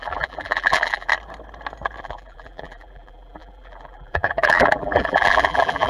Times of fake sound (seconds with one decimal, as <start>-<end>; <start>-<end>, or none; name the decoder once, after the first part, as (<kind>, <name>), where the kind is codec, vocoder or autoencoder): 0.0-1.1 (vocoder, BigVGAN v2); 2.0-5.9